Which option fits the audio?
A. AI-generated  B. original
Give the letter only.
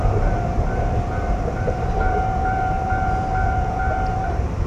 A